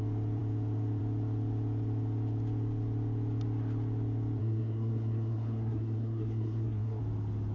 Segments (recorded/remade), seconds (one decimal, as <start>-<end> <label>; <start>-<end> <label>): 0.0-4.4 recorded; 4.4-7.0 remade; 7.0-7.5 recorded